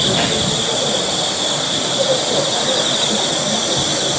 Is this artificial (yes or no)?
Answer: no